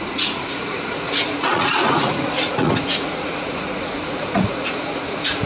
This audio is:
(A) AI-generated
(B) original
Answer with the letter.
A